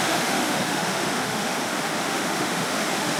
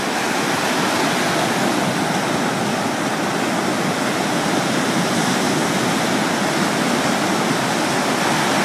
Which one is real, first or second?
second